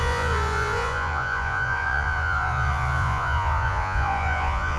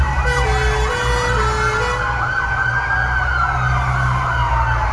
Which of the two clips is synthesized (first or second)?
first